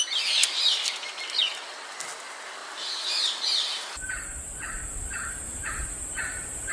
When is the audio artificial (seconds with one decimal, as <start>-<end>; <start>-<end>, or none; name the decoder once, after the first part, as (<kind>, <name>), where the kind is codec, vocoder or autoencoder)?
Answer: 2.6-6.7 (vocoder, BigVGAN v2)